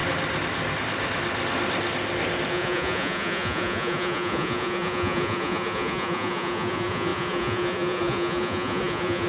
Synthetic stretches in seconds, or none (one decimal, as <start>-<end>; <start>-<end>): 2.5-9.3